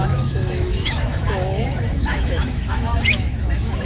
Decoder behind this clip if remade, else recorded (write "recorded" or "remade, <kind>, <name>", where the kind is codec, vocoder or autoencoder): remade, autoencoder, DAC-VAE